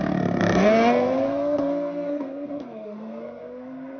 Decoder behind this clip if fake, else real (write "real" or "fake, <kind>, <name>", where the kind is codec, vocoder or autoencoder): fake, codec, SNAC